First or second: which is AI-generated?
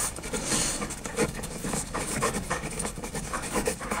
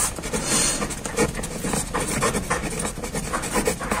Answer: first